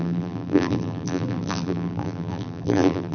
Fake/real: fake